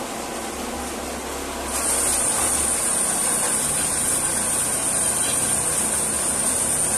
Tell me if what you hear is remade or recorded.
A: recorded